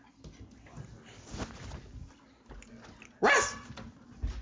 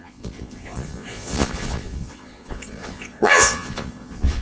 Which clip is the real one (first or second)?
first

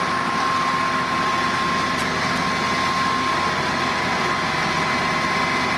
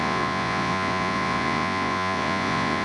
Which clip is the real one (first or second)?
first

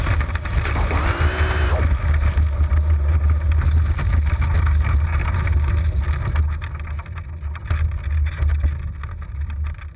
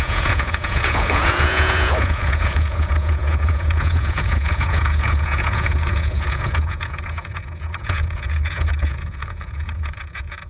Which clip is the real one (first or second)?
first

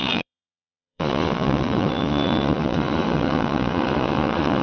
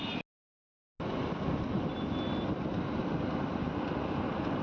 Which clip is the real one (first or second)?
second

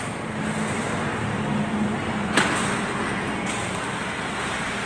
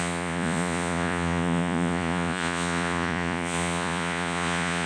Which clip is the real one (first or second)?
first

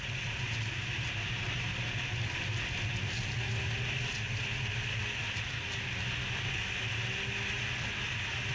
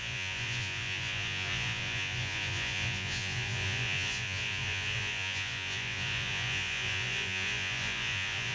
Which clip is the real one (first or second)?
first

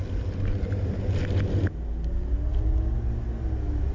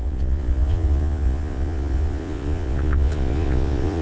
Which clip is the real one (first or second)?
first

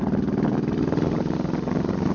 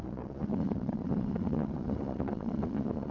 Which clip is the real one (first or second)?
first